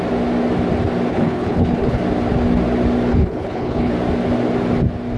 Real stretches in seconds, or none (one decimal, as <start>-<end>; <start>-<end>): 0.0-1.1; 2.0-3.1; 3.9-5.2